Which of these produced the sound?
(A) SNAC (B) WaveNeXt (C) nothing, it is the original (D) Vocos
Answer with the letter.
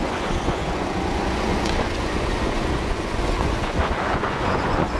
D